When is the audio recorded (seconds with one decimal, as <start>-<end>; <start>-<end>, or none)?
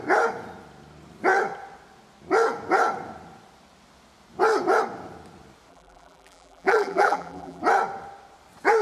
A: 0.0-5.7; 7.6-8.8